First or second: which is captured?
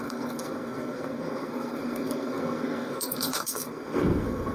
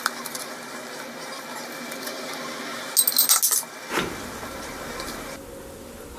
second